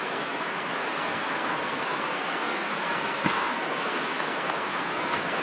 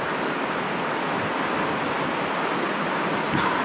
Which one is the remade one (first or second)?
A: first